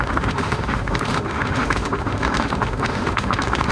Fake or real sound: fake